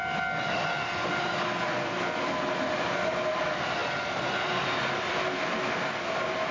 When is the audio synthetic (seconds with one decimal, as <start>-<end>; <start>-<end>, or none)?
none